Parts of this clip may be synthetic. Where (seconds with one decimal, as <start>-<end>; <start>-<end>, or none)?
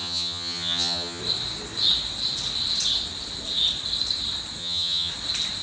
0.0-1.2; 4.6-5.1